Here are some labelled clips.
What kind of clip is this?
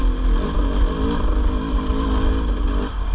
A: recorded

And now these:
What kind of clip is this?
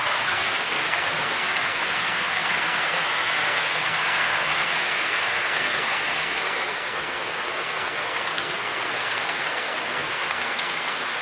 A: remade